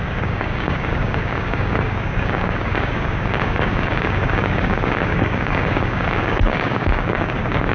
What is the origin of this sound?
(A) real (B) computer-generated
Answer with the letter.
B